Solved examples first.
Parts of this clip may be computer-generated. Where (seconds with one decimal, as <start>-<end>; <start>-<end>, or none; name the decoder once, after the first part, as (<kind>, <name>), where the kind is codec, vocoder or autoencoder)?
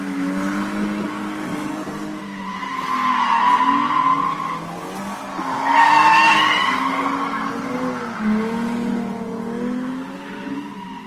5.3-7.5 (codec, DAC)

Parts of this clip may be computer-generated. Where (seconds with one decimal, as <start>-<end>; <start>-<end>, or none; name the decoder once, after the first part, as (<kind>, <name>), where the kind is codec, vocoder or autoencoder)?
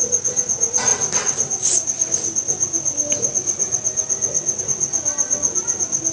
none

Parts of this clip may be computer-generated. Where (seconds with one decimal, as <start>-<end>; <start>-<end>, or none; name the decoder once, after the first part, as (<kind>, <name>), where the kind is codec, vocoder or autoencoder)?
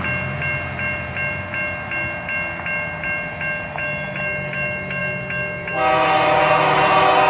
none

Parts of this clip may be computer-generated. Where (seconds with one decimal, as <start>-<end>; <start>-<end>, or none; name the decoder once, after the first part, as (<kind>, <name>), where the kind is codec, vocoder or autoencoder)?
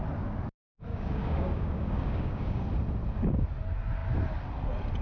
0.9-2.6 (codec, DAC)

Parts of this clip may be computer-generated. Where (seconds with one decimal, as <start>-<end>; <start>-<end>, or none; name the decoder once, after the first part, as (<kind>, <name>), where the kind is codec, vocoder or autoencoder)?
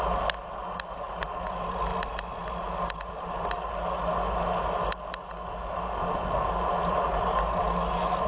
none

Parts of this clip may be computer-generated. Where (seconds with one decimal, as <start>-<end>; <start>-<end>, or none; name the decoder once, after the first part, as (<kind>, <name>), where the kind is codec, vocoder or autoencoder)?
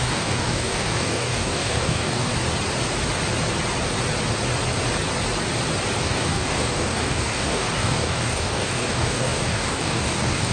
0.0-2.3 (codec, DAC); 6.0-10.5